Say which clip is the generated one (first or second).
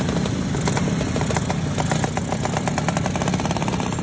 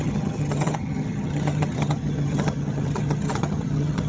second